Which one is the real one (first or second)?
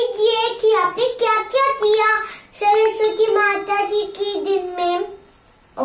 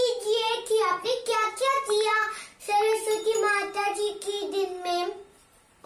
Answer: first